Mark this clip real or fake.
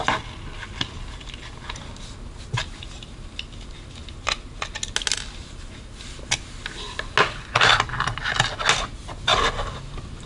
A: real